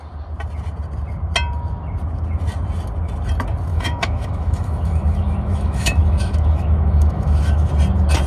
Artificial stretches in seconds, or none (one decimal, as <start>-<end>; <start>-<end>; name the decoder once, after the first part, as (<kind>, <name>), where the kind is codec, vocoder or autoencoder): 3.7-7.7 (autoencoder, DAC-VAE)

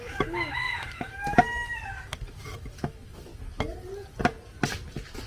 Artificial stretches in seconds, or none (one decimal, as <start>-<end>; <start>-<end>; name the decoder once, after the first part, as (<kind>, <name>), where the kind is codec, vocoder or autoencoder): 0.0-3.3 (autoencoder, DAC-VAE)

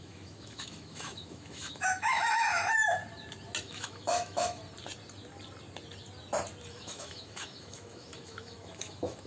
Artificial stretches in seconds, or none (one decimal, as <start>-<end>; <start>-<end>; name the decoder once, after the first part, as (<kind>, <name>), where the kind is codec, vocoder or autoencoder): 0.0-3.0 (autoencoder, DAC-VAE); 3.6-4.6; 6.7-9.3

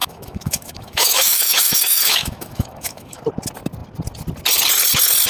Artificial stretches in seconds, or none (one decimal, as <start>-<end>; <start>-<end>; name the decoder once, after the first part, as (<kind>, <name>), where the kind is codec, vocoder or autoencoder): 0.0-3.2 (autoencoder, DAC-VAE)

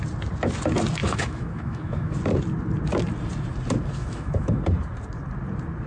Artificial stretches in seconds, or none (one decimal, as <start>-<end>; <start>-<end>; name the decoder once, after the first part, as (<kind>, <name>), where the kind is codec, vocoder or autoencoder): 1.0-2.2 (autoencoder, DAC-VAE); 4.0-4.6

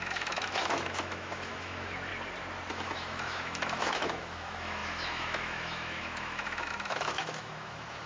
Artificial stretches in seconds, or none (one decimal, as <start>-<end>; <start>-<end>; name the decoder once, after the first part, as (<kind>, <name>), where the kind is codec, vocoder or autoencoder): 0.0-2.1 (autoencoder, DAC-VAE); 2.7-8.1

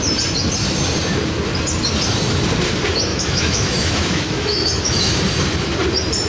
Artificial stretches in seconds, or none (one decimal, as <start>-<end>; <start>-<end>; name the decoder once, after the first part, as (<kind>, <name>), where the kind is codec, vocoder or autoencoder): 3.1-5.2 (autoencoder, DAC-VAE)

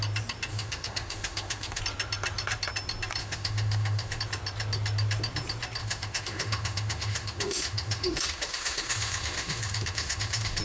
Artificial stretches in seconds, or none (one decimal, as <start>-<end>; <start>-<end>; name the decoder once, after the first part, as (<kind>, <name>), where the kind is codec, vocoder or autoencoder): 0.5-1.8 (autoencoder, DAC-VAE); 3.2-4.2; 5.8-10.6